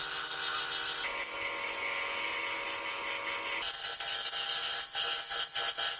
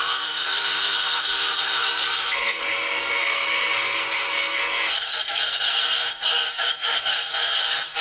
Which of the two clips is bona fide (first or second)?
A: first